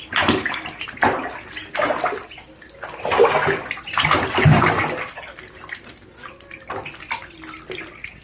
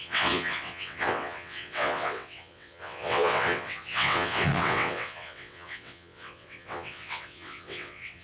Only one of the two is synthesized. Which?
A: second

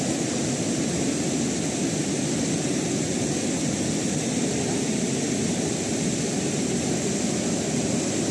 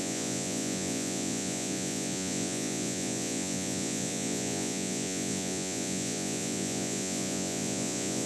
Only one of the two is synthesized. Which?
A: second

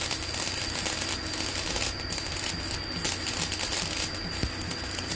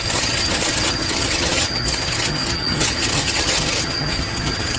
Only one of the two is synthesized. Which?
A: second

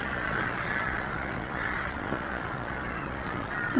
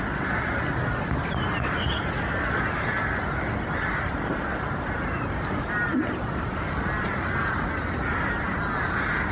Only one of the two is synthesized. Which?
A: first